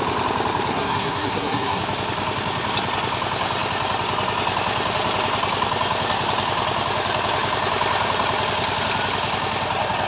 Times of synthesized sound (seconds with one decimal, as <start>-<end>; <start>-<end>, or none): 0.7-1.8